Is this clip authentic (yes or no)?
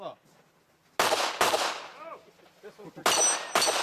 yes